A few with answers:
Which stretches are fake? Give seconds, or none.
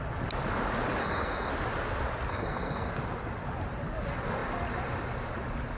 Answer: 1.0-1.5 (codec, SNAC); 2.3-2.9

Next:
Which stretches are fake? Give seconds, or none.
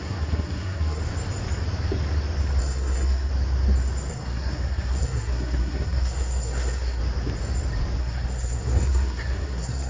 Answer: 0.0-1.0 (codec, SNAC); 2.6-3.3; 4.1-7.0; 8.0-9.9